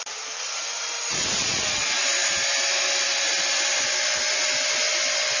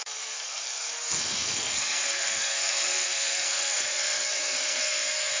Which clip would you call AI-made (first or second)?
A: second